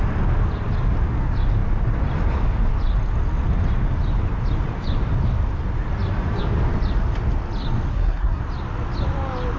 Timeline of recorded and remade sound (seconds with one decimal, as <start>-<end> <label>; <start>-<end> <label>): 0.0-7.9 recorded; 7.9-8.4 remade; 8.4-9.6 recorded